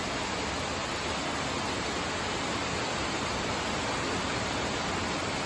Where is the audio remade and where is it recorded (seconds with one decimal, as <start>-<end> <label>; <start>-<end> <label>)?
0.0-5.5 recorded